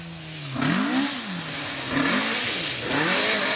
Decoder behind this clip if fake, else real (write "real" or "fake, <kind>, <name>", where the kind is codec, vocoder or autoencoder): real